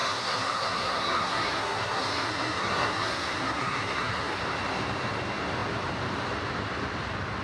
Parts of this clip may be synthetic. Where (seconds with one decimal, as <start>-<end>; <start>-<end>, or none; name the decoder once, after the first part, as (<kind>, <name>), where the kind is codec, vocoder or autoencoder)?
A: 0.0-4.4 (codec, SNAC)